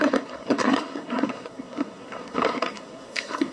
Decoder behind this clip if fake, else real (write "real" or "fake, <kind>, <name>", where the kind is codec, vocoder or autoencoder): fake, codec, SNAC